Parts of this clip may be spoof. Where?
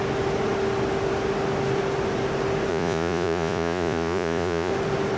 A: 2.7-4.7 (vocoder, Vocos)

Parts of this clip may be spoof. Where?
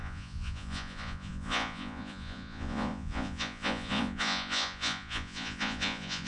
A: 0.0-6.3 (vocoder, Vocos)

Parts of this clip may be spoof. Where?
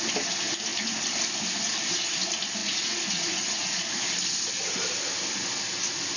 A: 2.6-4.0 (vocoder, Vocos)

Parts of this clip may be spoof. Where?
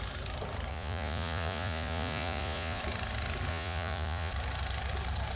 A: 0.7-2.8 (vocoder, Vocos); 3.5-4.3